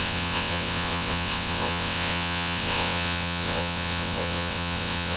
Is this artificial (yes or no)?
yes